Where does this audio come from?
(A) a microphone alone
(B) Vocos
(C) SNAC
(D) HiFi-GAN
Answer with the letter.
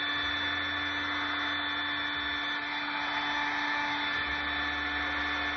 A